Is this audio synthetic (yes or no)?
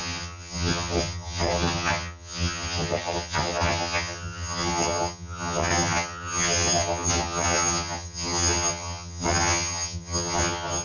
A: yes